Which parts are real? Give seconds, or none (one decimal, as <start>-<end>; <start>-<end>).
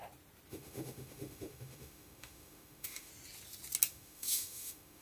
0.0-0.5; 3.1-3.9